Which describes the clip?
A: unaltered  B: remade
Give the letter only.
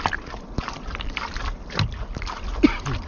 A